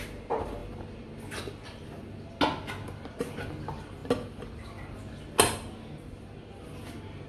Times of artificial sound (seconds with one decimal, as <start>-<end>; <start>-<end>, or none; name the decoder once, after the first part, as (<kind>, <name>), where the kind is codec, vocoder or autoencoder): none